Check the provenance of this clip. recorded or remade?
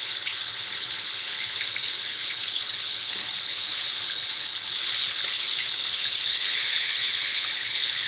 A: remade